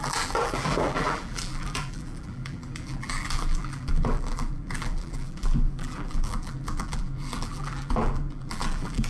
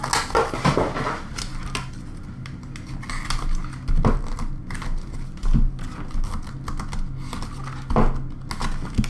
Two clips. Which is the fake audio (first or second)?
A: first